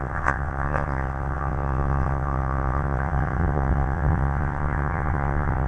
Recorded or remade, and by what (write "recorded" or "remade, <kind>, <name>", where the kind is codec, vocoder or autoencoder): remade, vocoder, WaveNeXt